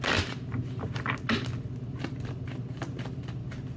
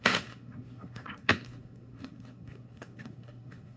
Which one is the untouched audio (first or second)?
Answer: first